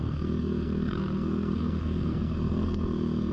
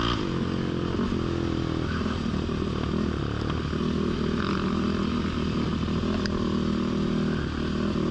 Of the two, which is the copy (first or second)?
first